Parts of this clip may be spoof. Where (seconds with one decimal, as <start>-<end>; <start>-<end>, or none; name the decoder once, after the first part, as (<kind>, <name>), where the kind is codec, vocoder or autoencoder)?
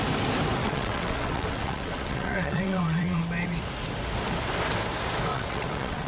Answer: 0.6-3.2 (vocoder, WaveNeXt); 5.3-6.1